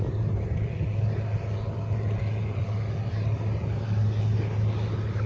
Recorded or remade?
recorded